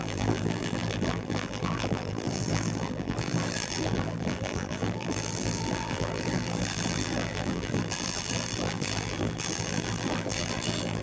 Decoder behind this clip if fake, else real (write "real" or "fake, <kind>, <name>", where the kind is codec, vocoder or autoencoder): fake, vocoder, BigVGAN v2